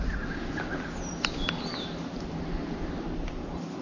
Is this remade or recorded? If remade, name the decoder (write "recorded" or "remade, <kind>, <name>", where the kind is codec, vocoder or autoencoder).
recorded